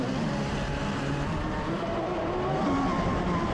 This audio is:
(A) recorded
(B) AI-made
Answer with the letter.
A